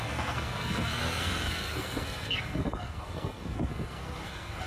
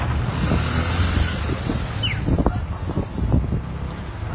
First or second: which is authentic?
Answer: second